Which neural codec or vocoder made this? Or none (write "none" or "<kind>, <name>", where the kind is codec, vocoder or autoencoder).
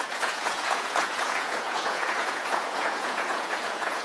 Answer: vocoder, Vocos